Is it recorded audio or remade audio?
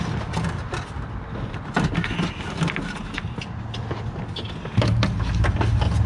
recorded